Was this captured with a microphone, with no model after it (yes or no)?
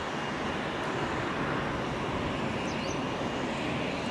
yes